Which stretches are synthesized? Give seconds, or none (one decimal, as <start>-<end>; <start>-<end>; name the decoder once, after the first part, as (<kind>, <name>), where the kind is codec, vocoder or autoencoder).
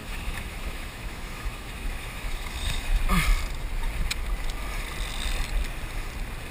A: 0.0-3.0 (autoencoder, DAC-VAE)